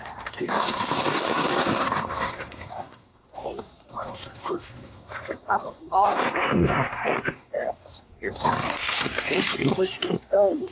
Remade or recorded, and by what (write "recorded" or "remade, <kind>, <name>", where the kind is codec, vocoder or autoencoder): remade, codec, SNAC